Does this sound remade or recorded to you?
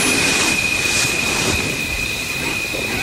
recorded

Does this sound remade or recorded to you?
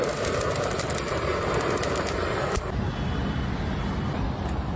recorded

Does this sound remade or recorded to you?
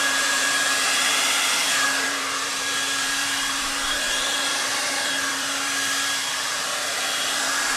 remade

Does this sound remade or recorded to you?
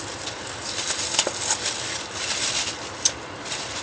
recorded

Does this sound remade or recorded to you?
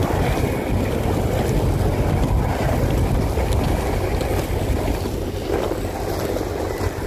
recorded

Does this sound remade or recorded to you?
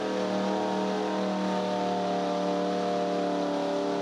recorded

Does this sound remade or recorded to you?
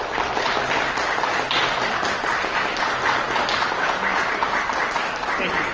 recorded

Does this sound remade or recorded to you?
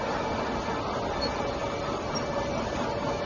recorded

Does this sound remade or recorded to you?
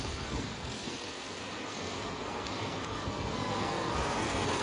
remade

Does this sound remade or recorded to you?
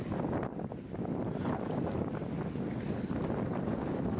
recorded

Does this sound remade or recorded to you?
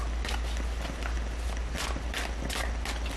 recorded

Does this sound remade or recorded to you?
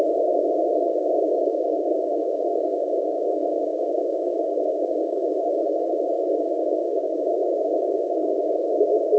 remade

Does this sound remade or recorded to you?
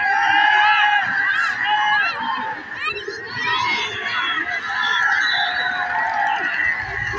recorded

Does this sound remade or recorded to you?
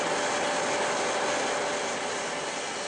recorded